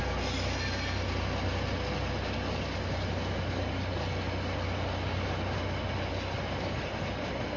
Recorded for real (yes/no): yes